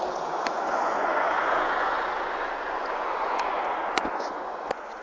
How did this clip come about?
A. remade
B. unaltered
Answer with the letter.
A